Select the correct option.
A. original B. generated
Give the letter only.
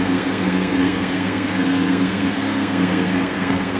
B